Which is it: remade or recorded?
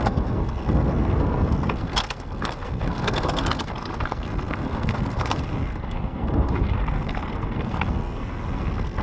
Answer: remade